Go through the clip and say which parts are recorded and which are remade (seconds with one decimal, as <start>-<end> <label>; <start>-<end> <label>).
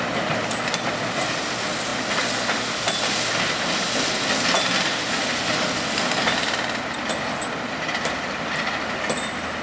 0.0-9.6 recorded